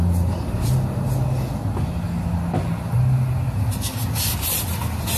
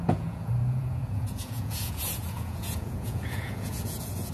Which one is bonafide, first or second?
first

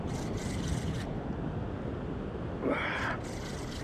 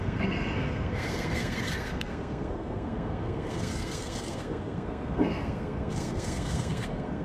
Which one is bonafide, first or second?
first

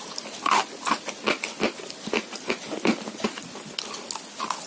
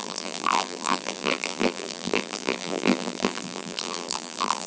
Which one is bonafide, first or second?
first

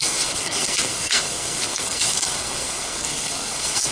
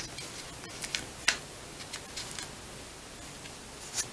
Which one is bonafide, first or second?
second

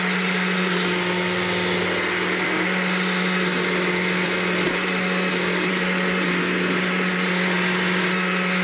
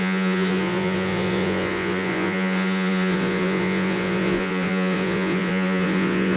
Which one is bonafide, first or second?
first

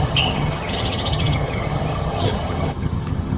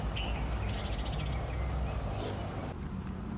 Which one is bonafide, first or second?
second